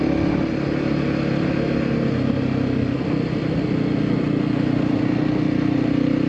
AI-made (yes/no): no